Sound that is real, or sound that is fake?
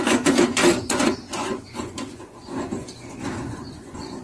fake